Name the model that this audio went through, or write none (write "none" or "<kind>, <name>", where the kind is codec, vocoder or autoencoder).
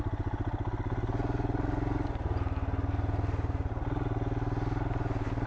none